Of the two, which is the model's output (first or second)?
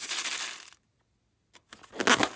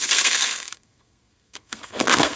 second